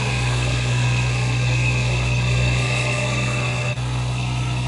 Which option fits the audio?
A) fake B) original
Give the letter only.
A